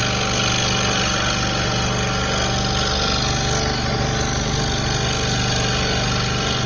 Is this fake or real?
real